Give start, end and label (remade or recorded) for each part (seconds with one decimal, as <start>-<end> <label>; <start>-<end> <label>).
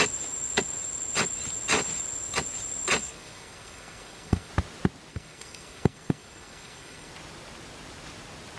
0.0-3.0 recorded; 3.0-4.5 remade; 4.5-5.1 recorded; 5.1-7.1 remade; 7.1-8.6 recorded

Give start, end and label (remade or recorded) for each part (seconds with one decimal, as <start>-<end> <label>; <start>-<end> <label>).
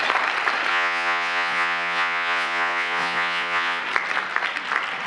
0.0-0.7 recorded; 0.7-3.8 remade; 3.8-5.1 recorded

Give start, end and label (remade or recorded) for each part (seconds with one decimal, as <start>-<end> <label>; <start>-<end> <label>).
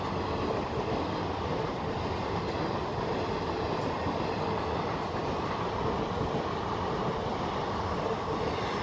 0.0-8.8 recorded